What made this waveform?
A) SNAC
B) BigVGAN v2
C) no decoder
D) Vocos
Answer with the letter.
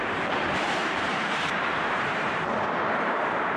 B